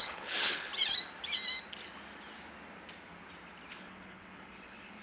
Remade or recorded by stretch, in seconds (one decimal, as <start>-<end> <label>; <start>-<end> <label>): 0.0-0.7 remade; 0.7-3.7 recorded; 3.7-5.0 remade